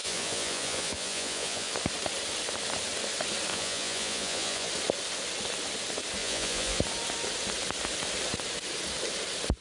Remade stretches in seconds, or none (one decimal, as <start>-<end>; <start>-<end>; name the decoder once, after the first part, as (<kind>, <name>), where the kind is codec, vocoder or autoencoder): 0.0-1.7 (vocoder, Vocos); 3.5-4.7; 6.2-6.8